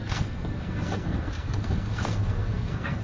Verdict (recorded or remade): remade